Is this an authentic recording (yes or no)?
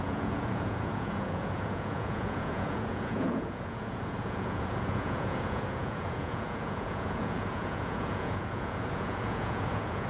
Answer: no